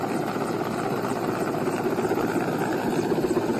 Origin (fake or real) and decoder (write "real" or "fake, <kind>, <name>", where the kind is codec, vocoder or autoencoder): real